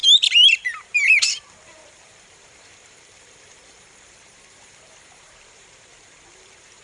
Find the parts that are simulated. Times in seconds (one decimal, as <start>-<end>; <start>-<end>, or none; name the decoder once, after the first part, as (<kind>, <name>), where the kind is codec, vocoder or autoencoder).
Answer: 0.0-6.8 (vocoder, BigVGAN v2)